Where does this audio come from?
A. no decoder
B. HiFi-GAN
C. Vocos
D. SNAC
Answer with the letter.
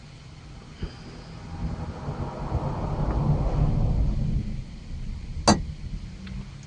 A